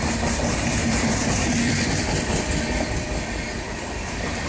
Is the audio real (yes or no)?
yes